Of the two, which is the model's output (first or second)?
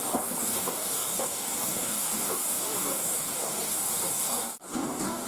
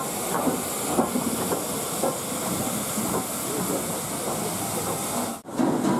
first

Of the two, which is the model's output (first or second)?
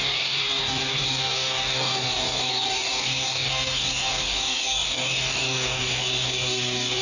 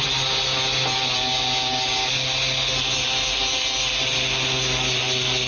first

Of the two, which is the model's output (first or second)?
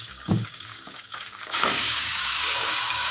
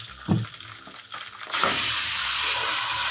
first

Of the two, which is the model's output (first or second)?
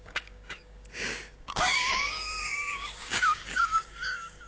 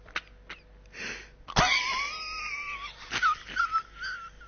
first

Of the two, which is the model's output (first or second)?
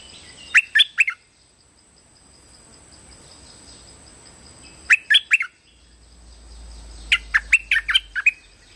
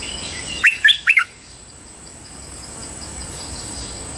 second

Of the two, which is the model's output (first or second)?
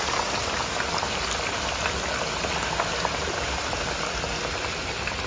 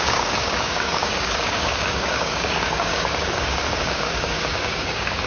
second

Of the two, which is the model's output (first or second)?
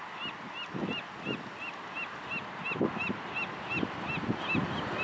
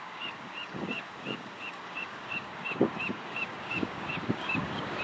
second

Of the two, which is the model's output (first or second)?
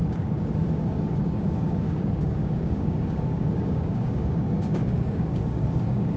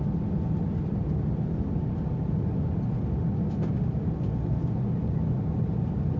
first